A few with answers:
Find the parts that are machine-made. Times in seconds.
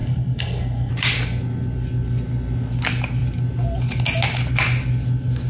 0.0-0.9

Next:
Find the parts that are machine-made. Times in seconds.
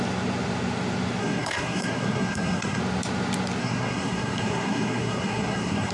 1.2-2.8; 3.6-5.9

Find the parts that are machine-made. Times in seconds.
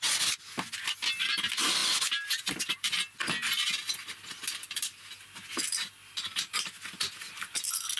none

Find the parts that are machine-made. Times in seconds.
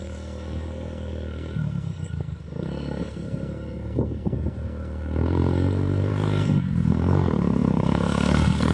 0.0-8.7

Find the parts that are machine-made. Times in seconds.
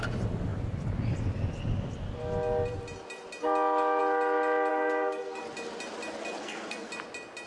4.7-5.4; 6.4-6.9